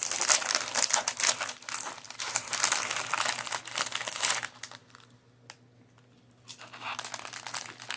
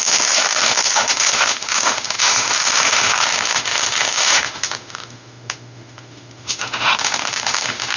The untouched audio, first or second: first